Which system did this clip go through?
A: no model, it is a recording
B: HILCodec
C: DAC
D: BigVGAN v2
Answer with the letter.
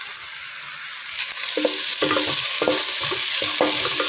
A